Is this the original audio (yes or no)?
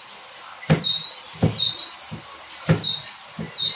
yes